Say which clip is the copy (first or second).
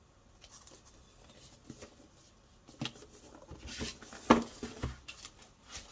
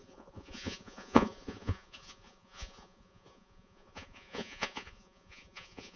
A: second